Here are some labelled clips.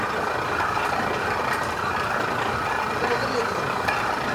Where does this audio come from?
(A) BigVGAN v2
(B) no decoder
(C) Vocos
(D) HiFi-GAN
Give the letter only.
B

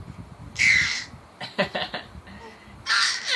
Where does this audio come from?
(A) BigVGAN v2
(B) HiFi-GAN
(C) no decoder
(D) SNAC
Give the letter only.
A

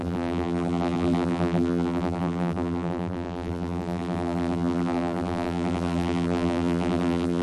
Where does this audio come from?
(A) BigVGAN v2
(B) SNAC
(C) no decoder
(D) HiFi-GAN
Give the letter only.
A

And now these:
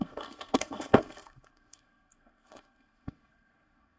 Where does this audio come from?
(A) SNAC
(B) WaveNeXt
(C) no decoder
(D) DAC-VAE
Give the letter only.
A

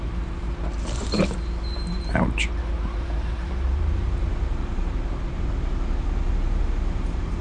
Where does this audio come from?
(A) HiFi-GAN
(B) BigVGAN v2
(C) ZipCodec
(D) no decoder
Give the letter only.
B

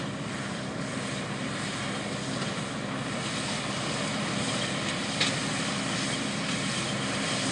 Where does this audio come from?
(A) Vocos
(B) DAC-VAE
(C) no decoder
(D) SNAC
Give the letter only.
C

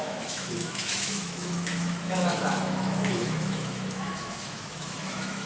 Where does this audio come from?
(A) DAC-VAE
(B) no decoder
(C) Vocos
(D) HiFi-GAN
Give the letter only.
A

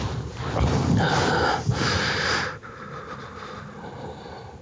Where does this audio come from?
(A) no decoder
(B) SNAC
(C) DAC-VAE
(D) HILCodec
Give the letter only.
A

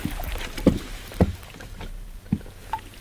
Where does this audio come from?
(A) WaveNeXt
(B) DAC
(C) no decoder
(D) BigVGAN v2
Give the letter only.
C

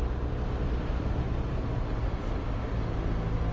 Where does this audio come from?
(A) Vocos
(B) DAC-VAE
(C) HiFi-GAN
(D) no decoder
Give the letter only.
D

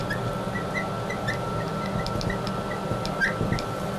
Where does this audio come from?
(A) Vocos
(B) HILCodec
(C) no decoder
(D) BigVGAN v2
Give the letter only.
C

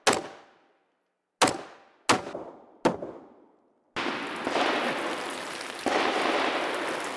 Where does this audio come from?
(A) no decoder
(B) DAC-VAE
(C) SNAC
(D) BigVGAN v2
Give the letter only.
A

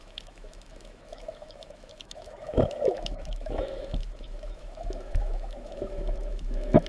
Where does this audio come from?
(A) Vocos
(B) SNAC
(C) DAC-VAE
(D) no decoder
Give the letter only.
C